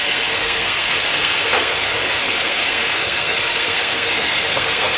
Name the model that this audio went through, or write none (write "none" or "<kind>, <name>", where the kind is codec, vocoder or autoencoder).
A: codec, SNAC